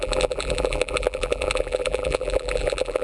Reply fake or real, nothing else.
fake